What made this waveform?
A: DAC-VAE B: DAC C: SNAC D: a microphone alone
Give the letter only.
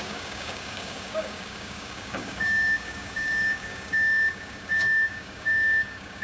B